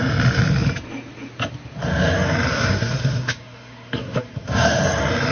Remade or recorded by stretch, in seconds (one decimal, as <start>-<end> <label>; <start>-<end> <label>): 0.0-2.5 recorded; 2.5-4.8 remade; 4.8-5.3 recorded